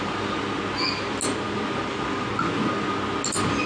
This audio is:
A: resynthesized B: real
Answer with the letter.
B